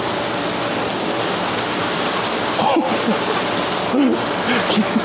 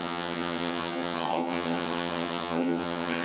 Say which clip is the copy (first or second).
second